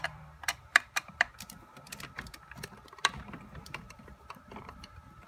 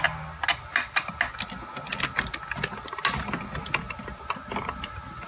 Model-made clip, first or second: first